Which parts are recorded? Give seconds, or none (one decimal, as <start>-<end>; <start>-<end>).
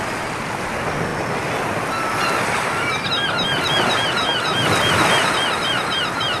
0.0-6.4